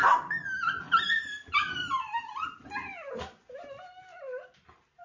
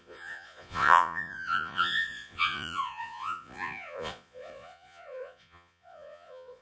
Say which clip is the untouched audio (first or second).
first